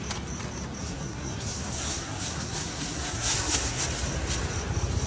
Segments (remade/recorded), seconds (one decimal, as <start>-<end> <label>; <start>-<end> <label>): 0.0-0.8 recorded; 0.8-3.8 remade; 3.8-5.1 recorded